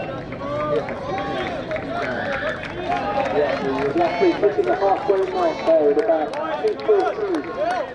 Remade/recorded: recorded